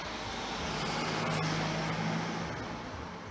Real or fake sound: real